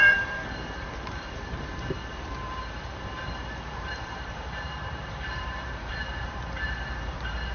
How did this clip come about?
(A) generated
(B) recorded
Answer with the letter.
A